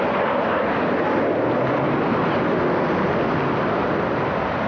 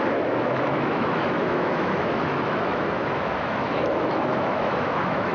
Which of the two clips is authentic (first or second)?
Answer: first